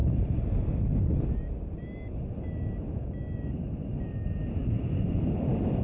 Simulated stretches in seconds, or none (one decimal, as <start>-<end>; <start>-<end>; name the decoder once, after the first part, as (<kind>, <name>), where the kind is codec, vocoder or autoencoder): 4.6-5.8 (vocoder, BigVGAN v2)